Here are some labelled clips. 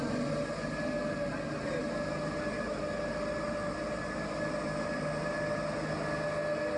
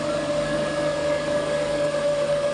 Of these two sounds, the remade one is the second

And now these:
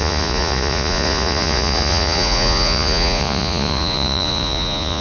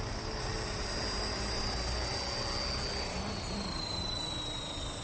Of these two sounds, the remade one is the first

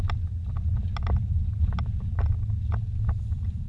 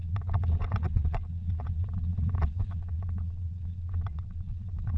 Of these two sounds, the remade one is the second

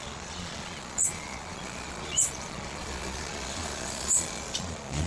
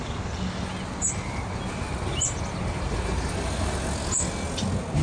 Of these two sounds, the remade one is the first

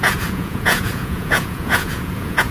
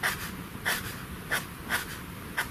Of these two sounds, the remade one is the first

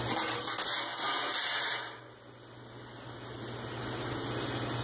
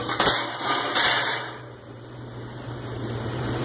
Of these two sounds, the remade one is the second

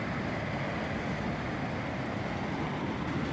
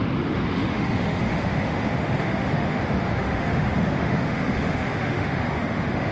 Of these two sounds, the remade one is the second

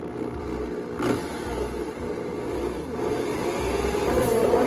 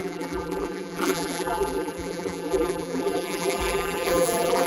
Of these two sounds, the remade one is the second